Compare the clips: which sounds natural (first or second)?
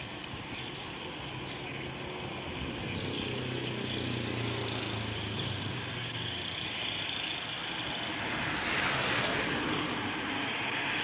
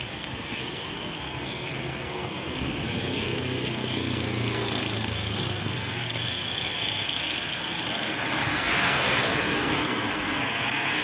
first